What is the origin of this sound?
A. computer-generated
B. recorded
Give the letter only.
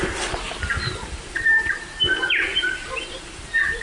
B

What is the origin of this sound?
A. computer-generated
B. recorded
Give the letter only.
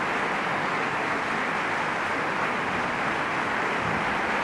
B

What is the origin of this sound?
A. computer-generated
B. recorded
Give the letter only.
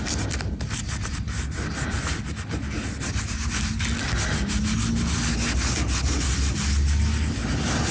B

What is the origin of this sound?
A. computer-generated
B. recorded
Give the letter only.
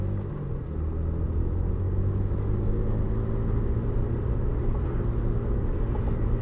B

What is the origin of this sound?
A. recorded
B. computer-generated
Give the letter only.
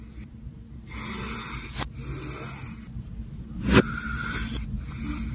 A